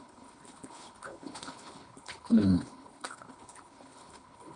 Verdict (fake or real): fake